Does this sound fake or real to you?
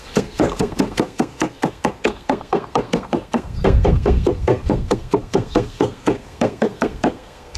fake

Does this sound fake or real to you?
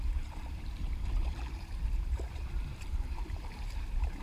fake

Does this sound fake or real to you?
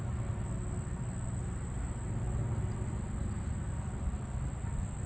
real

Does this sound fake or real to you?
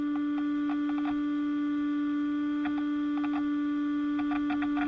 real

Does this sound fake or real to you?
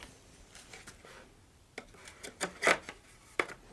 real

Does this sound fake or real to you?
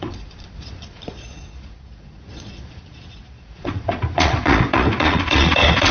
fake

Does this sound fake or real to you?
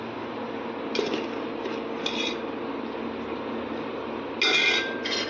real